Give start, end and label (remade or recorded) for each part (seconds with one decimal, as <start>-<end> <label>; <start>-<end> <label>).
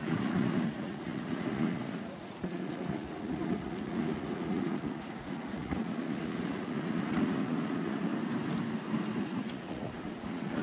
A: 0.0-8.1 remade; 8.1-9.2 recorded; 9.2-10.6 remade